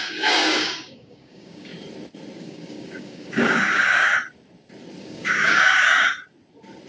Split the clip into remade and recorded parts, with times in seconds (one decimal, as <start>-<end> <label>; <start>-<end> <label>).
0.0-1.7 remade; 1.7-2.4 recorded; 2.4-4.1 remade; 4.1-5.0 recorded; 5.0-6.1 remade; 6.1-6.9 recorded